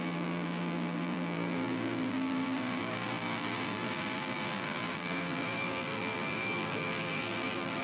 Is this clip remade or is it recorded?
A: remade